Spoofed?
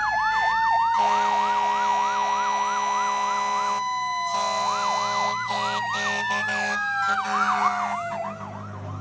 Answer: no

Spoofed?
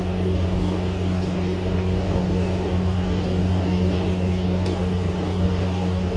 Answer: yes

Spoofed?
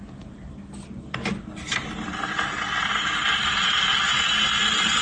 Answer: no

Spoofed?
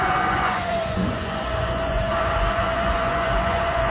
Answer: yes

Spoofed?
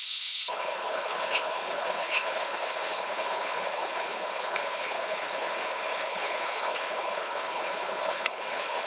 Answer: yes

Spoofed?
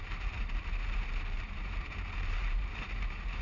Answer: yes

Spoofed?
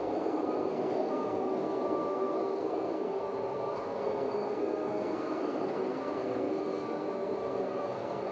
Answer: yes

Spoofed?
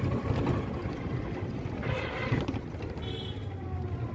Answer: no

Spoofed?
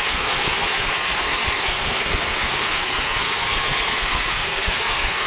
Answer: yes